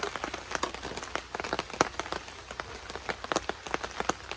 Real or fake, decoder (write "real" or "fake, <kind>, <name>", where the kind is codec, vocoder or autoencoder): real